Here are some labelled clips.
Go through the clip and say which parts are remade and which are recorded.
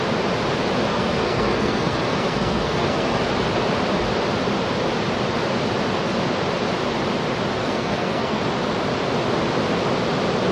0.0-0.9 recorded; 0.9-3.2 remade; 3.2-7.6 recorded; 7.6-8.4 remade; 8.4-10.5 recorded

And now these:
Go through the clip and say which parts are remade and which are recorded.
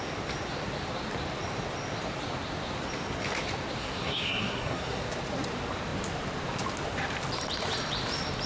0.0-3.8 recorded; 3.8-5.0 remade; 5.0-8.5 recorded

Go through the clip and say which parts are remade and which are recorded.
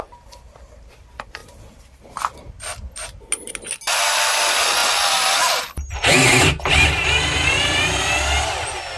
0.0-9.0 recorded